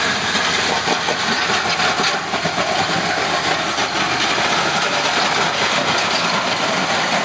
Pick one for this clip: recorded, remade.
recorded